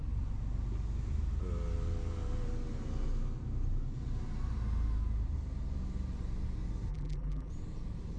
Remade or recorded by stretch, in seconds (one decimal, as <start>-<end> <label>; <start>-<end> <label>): 0.0-6.9 recorded; 6.9-7.5 remade; 7.5-8.2 recorded